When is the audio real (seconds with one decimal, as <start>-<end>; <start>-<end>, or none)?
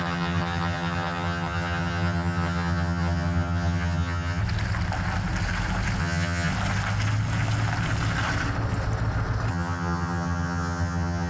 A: 4.4-6.0; 6.5-9.5